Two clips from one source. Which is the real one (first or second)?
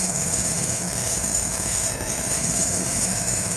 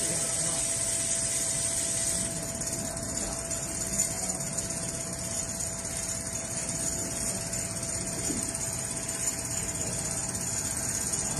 second